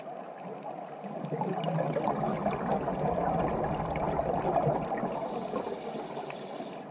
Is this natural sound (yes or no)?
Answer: yes